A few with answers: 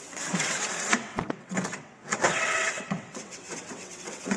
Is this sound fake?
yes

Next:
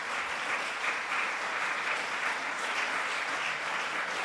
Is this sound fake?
no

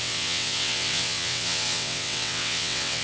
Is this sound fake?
yes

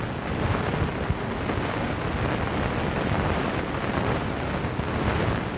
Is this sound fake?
no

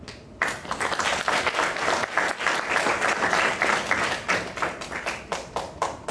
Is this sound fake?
no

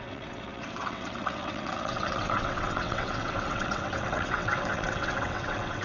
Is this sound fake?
yes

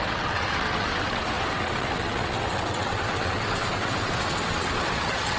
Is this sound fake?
yes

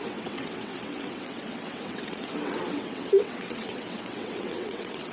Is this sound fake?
yes